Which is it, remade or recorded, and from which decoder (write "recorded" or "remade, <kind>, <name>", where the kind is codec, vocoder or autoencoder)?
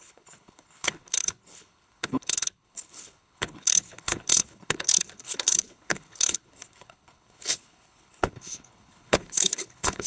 remade, codec, HILCodec